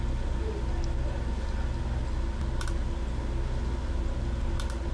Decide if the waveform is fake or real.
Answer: real